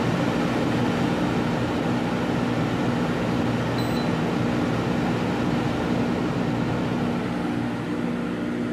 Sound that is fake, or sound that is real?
real